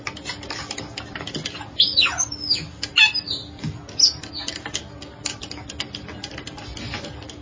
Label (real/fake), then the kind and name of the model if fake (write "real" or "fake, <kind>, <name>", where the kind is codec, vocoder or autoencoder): real